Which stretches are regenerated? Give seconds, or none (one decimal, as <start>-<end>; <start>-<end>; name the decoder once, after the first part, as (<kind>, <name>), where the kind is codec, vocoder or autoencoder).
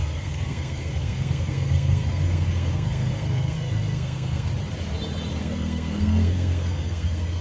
0.0-4.5 (codec, SNAC); 5.4-7.4